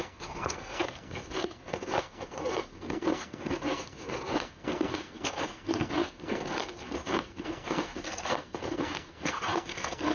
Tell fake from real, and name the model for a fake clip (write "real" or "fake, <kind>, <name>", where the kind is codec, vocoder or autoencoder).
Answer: fake, codec, SNAC